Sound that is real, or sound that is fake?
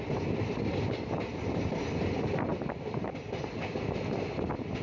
real